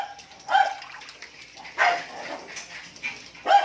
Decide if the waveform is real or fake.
real